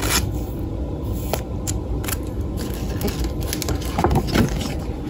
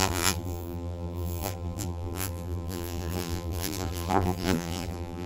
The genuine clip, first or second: first